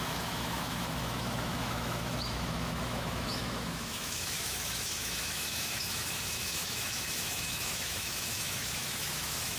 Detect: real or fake fake